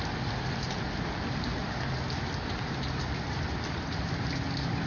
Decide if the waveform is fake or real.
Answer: real